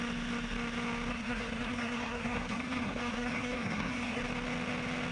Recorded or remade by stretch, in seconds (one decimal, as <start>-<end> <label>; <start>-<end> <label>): 0.0-1.1 recorded; 1.1-4.2 remade; 4.2-5.1 recorded